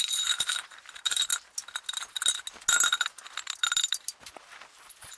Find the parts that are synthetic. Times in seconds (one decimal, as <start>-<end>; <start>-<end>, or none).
0.0-1.3; 4.4-5.2